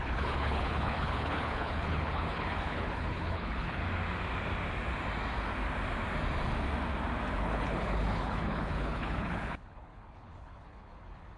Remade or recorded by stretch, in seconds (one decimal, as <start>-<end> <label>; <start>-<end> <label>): 0.0-3.8 remade; 3.8-7.4 recorded; 7.4-11.4 remade